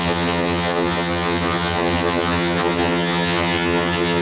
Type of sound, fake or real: fake